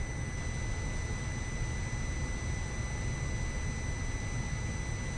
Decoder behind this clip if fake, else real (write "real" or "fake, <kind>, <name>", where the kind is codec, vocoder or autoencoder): real